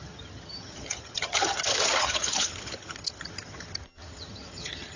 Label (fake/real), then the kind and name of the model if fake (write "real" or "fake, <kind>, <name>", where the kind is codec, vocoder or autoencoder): fake, vocoder, HiFi-GAN